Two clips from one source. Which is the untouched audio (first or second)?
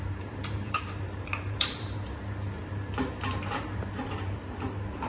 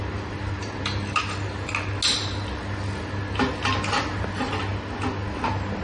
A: second